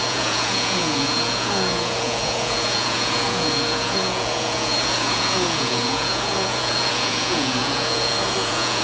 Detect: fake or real fake